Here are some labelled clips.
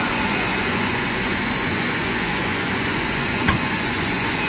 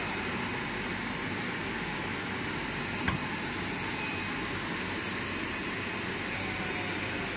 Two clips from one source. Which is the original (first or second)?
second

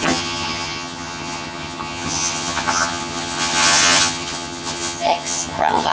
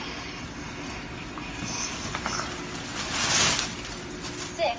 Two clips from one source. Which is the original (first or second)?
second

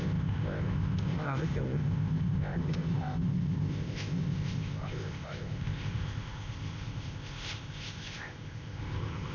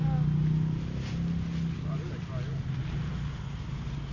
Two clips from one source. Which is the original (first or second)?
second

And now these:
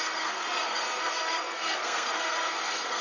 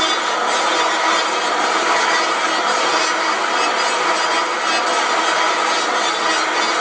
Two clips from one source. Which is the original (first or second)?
second